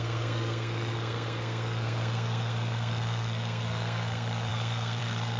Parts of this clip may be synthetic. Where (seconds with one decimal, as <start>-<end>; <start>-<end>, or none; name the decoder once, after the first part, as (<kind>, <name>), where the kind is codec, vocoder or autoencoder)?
0.0-5.4 (codec, SNAC)